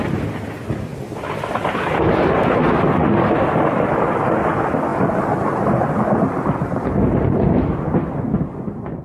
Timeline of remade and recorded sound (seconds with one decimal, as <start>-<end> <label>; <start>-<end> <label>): 0.0-9.0 recorded